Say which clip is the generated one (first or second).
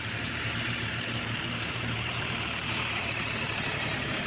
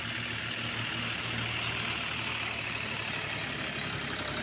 first